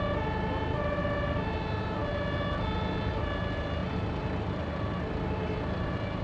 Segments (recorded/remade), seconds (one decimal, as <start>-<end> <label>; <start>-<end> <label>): 0.0-6.2 recorded